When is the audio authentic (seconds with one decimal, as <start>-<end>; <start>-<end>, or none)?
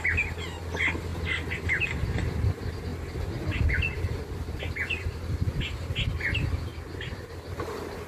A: 0.0-6.7; 7.3-8.1